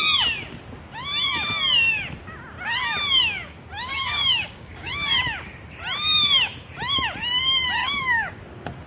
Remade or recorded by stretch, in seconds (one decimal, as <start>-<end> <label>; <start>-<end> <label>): 0.0-3.9 recorded; 3.9-5.2 remade; 5.2-7.8 recorded; 7.8-8.4 remade; 8.4-8.9 recorded